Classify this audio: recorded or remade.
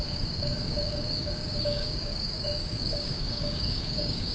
remade